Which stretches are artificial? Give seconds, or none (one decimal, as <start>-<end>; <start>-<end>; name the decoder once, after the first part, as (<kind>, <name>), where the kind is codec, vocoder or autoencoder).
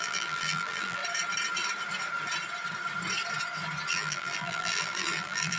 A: 0.0-1.0 (vocoder, BigVGAN v2); 3.9-5.6